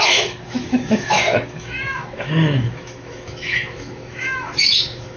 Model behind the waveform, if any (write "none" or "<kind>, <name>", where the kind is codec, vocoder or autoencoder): autoencoder, DAC-VAE